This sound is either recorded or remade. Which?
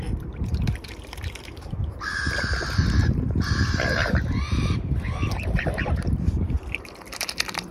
remade